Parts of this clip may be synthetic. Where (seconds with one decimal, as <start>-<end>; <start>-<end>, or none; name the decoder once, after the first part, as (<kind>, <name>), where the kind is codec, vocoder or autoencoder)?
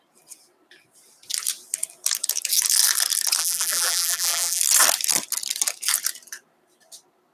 3.4-4.6 (vocoder, BigVGAN v2)